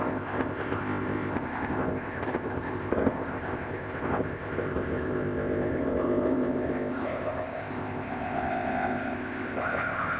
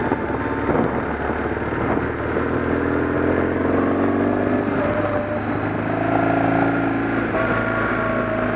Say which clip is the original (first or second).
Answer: second